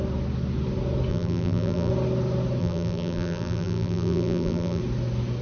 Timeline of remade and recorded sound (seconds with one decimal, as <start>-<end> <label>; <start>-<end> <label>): 0.0-1.1 recorded; 1.1-1.9 remade; 1.9-2.6 recorded; 2.6-4.8 remade; 4.8-5.4 recorded